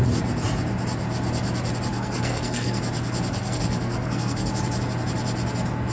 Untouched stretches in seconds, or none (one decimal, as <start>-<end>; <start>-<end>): 0.0-1.9; 2.8-3.3; 4.5-5.9